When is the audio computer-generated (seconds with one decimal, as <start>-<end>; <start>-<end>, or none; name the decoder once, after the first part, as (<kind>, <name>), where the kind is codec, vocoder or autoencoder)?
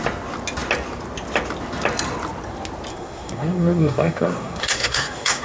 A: 2.9-5.4 (codec, SNAC)